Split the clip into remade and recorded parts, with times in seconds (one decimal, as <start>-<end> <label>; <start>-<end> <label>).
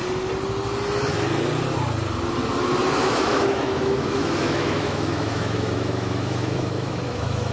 0.0-3.0 recorded; 3.0-7.5 remade